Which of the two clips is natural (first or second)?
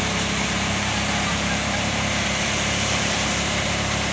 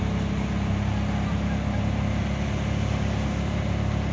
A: second